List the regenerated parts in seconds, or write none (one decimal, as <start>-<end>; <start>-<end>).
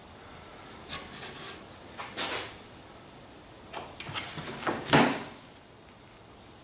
4.5-5.5